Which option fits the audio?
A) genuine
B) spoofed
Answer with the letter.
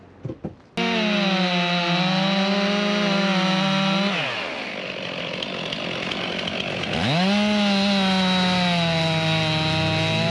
A